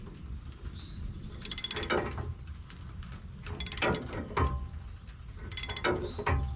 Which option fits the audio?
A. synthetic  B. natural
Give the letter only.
B